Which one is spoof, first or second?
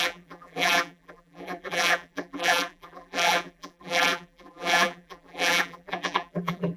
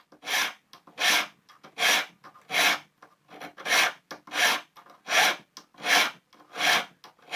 first